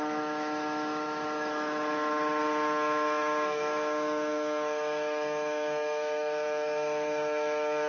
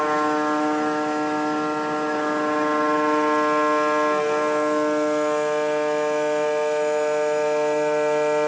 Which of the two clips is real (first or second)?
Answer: second